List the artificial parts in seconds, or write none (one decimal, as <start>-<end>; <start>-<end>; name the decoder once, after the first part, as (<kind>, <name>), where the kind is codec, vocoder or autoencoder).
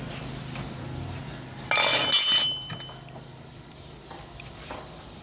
none